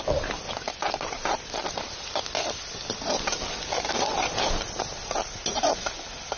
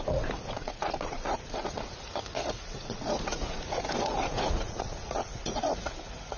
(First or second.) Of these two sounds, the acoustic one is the first